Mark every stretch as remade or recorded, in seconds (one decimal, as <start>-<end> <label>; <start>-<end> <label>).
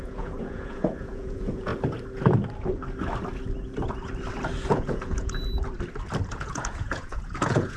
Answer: 0.0-1.7 remade; 1.7-4.7 recorded; 4.7-5.4 remade; 5.4-6.3 recorded; 6.3-7.8 remade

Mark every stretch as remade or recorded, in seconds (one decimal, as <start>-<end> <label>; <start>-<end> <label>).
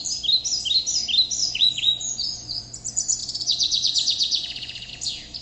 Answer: 0.0-1.4 recorded; 1.4-2.6 remade; 2.6-3.2 recorded; 3.2-4.9 remade; 4.9-5.4 recorded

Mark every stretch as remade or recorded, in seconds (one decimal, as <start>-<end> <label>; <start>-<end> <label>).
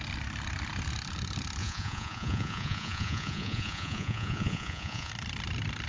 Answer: 0.0-1.6 recorded; 1.6-5.1 remade; 5.1-5.9 recorded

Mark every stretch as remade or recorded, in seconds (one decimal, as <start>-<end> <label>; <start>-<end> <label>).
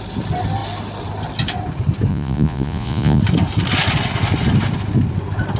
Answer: 0.0-2.1 recorded; 2.1-3.2 remade; 3.2-5.6 recorded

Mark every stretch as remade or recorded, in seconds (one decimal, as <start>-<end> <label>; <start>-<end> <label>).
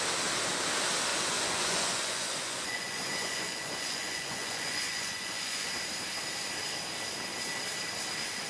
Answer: 0.0-1.1 recorded; 1.1-5.7 remade; 5.7-8.5 recorded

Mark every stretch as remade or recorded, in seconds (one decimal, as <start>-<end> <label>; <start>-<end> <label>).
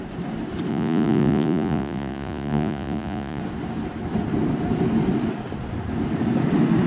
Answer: 0.0-0.7 recorded; 0.7-3.4 remade; 3.4-6.9 recorded